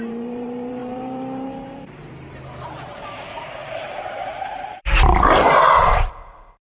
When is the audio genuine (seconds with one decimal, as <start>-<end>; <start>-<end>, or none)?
none